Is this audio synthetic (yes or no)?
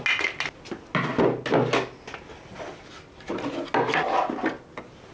no